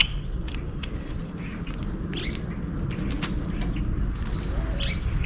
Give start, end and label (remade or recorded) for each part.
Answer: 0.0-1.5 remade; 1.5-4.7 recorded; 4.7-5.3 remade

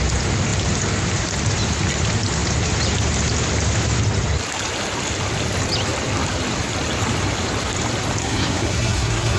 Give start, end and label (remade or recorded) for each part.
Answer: 0.0-8.2 recorded; 8.2-9.4 remade

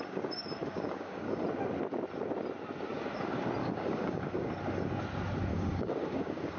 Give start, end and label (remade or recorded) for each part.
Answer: 0.0-0.6 recorded; 0.6-1.4 remade; 1.4-3.6 recorded; 3.6-4.5 remade; 4.5-5.5 recorded; 5.5-6.6 remade

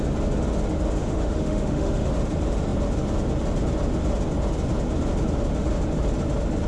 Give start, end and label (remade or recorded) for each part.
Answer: 0.0-1.0 recorded; 1.0-2.1 remade; 2.1-6.7 recorded

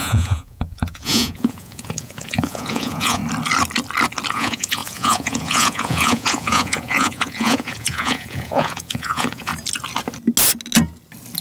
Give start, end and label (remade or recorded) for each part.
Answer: 0.0-3.2 remade; 3.2-4.3 recorded; 4.3-9.5 remade; 9.5-11.4 recorded